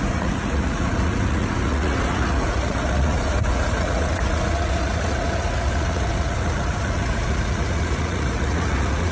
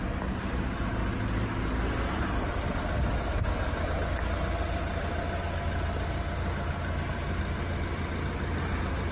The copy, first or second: first